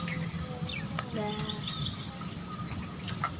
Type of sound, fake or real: real